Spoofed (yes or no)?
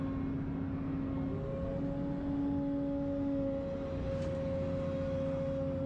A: no